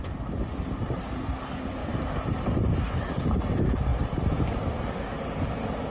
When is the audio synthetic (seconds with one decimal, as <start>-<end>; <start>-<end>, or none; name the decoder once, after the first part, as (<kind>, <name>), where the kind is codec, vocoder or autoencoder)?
0.0-0.6 (vocoder, BigVGAN v2); 3.9-4.7